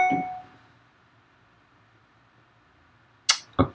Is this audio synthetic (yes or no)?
no